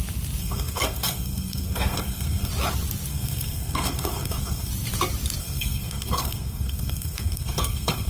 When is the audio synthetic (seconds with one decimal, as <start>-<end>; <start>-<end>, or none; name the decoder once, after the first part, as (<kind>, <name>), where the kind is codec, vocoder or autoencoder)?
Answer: 0.4-2.5 (codec, SNAC); 3.1-4.7; 5.4-8.1